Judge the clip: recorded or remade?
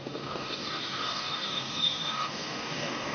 remade